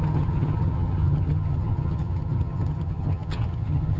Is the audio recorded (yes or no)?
no